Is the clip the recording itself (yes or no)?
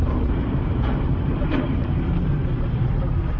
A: no